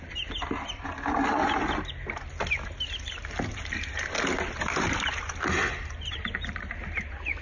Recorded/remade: recorded